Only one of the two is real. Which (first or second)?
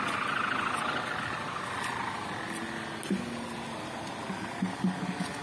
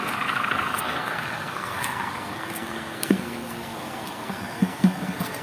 first